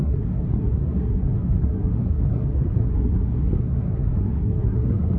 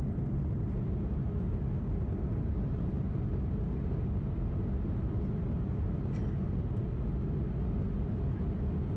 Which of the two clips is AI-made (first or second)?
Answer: first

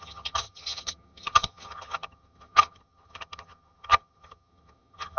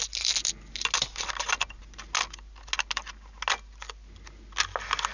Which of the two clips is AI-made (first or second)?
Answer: first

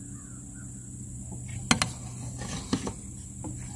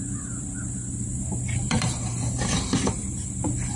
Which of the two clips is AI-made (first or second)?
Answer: second